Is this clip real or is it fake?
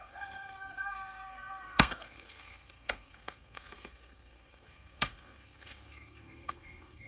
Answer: fake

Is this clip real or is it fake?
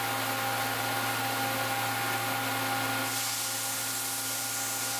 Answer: real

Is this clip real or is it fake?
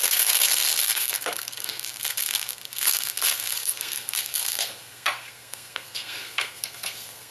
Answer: fake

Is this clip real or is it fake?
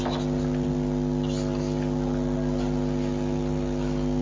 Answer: real